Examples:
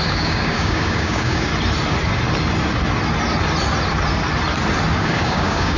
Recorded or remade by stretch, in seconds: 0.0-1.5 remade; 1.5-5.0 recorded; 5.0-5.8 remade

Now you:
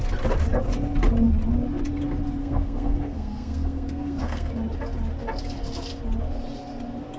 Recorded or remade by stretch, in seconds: 0.0-2.4 recorded; 2.4-4.5 remade; 4.5-7.2 recorded

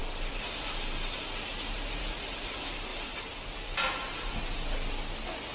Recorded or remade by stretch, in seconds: 0.0-5.5 recorded

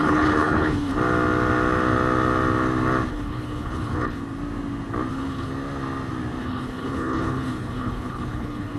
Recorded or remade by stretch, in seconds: 0.0-0.9 remade; 0.9-3.1 recorded; 3.1-4.2 remade; 4.2-5.1 recorded; 5.1-5.5 remade; 5.5-6.4 recorded; 6.4-8.8 remade